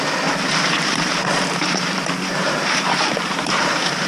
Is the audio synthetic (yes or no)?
yes